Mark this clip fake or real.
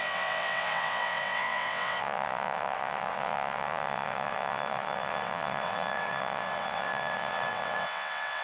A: fake